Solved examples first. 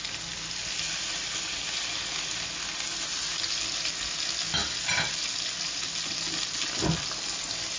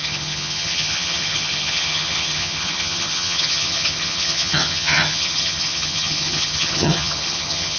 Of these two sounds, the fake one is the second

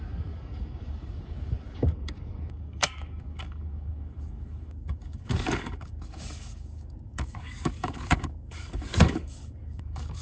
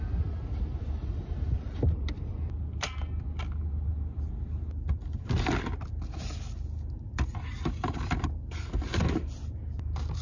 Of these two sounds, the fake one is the first